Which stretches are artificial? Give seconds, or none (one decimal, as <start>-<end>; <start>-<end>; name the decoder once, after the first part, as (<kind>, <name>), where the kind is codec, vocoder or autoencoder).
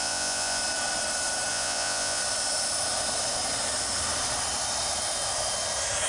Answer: 0.0-0.6 (vocoder, Vocos); 1.5-2.2